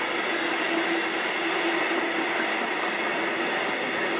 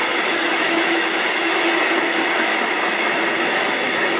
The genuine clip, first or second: first